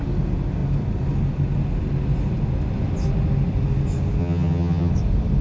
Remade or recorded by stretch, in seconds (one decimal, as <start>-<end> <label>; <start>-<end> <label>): 0.0-4.2 recorded; 4.2-4.9 remade; 4.9-5.4 recorded